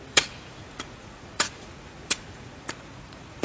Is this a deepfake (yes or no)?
yes